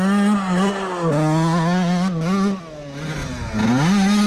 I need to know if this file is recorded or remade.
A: recorded